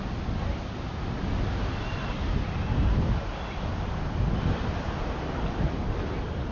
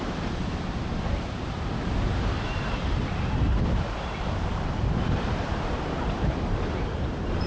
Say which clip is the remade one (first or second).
second